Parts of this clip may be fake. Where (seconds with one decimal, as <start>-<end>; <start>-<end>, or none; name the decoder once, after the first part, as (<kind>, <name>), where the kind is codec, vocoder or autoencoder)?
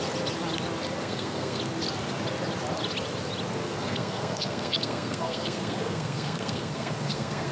1.0-1.6 (codec, SNAC); 3.6-7.5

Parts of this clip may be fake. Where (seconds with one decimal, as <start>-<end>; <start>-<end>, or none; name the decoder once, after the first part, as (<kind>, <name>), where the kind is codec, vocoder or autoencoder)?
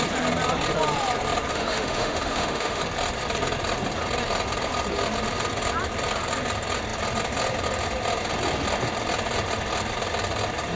1.5-2.8 (autoencoder, DAC-VAE)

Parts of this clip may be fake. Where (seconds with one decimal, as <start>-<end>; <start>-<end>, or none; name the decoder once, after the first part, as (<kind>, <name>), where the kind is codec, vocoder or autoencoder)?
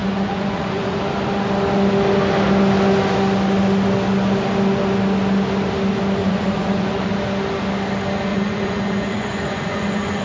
0.0-1.0 (vocoder, Vocos); 6.2-7.1; 8.3-10.2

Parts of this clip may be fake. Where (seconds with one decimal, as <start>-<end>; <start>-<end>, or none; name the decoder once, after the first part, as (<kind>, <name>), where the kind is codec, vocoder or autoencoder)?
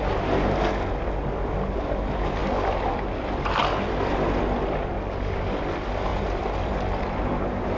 none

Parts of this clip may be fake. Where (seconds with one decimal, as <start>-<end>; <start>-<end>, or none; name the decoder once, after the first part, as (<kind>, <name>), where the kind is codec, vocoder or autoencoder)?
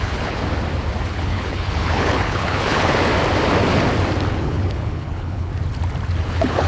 0.0-0.4 (codec, HILCodec); 1.1-3.1; 4.4-5.5; 6.2-6.7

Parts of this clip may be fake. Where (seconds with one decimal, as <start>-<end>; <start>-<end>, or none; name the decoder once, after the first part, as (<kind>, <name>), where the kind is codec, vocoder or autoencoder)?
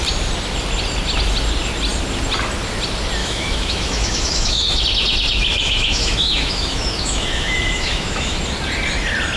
3.2-4.8 (autoencoder, DAC-VAE); 5.5-8.4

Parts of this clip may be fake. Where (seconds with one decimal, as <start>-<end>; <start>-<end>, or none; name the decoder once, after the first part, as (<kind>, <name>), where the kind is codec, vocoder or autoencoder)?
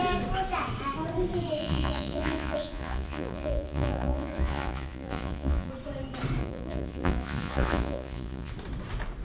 1.6-5.7 (vocoder, Vocos); 6.4-8.5